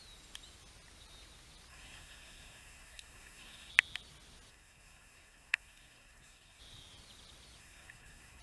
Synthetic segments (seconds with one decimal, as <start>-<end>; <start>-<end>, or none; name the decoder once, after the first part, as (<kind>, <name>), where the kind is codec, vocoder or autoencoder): 1.7-3.7 (codec, SNAC); 4.5-6.6; 7.6-8.4